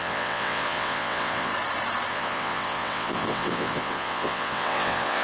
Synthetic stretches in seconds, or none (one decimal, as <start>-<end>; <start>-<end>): 0.0-1.5; 2.1-5.2